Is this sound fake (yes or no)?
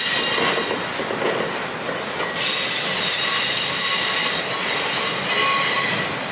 no